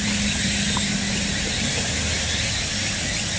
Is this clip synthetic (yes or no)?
no